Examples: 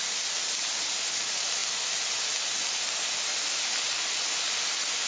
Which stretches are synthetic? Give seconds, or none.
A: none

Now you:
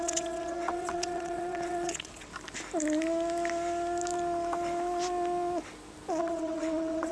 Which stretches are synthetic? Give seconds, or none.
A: 0.0-2.3 (vocoder, WaveNeXt); 6.2-7.1

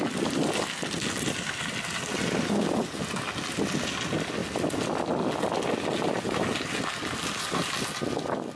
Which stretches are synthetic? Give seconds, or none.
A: none

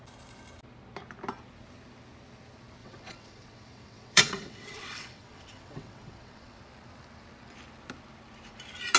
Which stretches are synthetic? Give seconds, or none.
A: 2.8-6.6 (vocoder, WaveNeXt)